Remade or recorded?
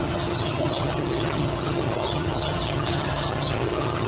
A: remade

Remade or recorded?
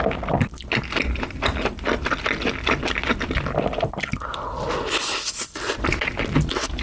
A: recorded